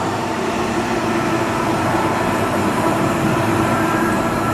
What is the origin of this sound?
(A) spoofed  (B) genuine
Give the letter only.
A